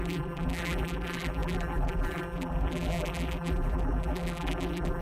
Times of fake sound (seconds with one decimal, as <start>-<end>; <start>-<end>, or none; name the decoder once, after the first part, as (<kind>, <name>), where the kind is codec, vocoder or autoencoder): 0.0-5.0 (vocoder, BigVGAN v2)